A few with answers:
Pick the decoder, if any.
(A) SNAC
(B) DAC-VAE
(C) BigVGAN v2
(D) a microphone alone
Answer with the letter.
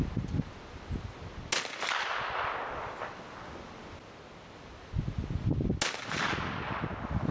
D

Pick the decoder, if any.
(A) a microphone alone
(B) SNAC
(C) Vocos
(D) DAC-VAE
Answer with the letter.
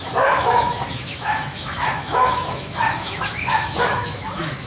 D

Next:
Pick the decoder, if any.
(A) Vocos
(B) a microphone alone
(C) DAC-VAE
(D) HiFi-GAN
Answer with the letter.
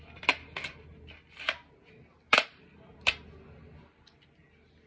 B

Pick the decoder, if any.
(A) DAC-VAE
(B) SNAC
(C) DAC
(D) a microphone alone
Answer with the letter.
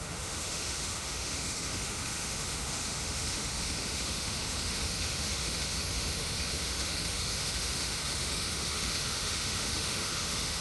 A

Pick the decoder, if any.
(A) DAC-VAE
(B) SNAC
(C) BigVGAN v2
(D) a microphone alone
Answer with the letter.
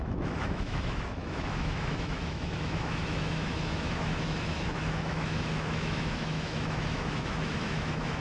A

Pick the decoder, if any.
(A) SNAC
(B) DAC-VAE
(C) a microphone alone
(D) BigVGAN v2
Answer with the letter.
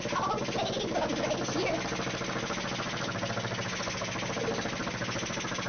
C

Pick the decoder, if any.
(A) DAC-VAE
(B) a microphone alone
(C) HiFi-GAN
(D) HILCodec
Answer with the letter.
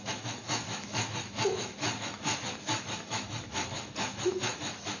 A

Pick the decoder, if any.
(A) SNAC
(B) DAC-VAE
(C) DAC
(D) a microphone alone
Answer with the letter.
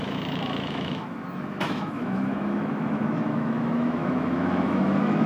B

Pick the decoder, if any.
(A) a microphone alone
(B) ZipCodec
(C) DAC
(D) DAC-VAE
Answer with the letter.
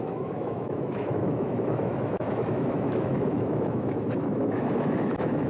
D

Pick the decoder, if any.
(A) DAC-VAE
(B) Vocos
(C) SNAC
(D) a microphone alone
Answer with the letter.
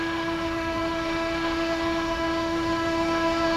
A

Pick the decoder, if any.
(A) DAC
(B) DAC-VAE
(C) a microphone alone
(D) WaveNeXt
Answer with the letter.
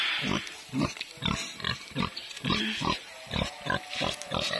C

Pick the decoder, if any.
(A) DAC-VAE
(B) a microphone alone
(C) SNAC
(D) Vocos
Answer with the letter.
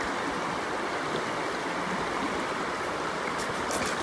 B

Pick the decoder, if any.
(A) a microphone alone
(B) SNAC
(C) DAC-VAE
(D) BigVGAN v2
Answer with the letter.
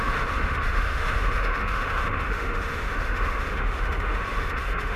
C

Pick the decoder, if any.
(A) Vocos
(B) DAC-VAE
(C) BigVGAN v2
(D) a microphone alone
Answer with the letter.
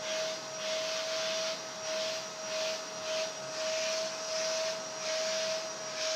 D